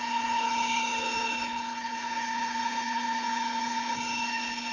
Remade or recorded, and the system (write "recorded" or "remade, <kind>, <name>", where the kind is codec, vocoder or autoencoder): remade, codec, HILCodec